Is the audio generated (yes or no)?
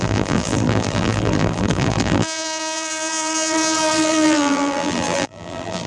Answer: yes